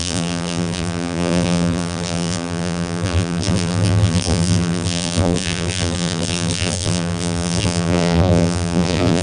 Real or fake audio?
fake